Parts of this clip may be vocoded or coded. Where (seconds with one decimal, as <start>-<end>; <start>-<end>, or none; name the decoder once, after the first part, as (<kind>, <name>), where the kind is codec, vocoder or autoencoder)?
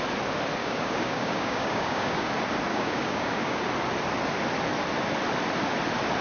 0.6-2.3 (codec, DAC); 2.7-3.6